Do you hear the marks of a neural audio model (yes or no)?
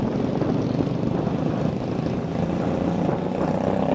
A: no